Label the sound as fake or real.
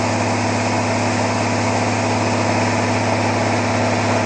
real